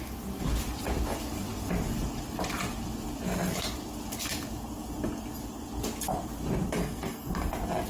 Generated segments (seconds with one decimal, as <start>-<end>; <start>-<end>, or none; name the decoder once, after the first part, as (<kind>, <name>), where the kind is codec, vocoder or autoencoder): 6.8-7.5 (codec, SNAC)